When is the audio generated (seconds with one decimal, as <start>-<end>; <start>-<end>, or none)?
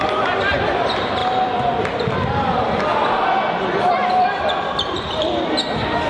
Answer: 0.0-2.9; 3.6-6.1